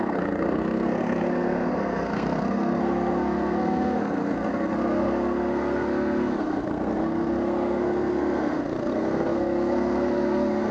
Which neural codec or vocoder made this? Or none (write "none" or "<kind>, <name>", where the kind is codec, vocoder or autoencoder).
codec, SNAC